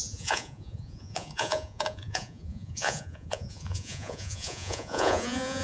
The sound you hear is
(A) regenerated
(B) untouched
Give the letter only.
A